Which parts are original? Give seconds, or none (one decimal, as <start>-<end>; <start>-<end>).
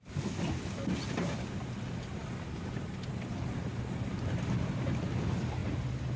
0.0-6.2